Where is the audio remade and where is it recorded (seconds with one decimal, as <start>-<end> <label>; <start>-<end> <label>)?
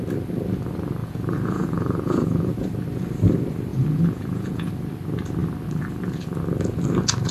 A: 0.0-1.0 recorded; 1.0-2.5 remade; 2.5-3.7 recorded; 3.7-4.7 remade; 4.7-7.3 recorded